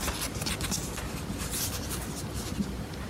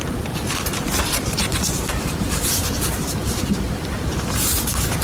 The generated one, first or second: second